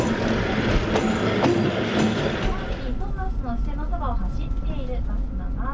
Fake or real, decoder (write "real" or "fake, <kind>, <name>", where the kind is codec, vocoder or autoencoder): real